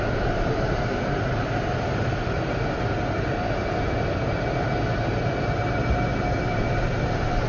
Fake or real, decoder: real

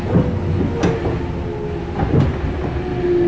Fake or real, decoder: real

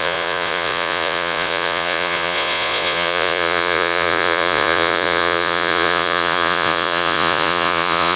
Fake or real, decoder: fake, vocoder, Vocos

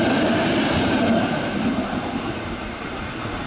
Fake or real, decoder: real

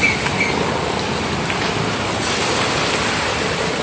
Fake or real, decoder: real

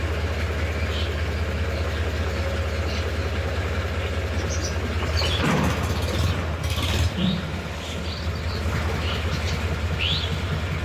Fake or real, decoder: real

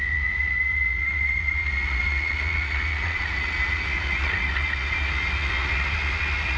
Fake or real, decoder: fake, vocoder, Vocos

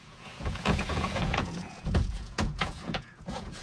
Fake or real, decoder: fake, vocoder, Vocos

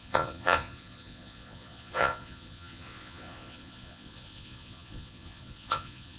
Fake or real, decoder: fake, vocoder, Vocos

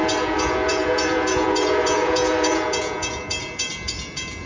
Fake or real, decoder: fake, vocoder, Vocos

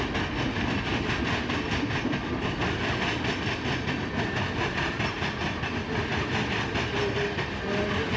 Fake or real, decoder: real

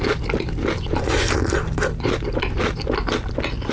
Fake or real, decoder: real